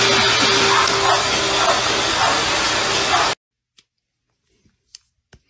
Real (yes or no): yes